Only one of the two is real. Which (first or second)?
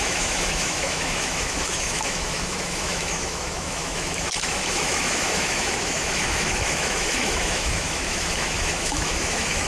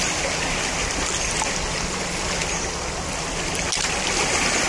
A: second